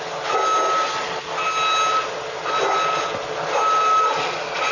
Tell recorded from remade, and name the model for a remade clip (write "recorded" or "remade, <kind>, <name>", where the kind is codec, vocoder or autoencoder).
recorded